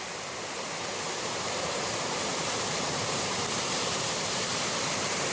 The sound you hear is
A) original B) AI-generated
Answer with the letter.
B